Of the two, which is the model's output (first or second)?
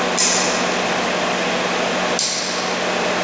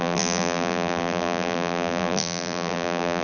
second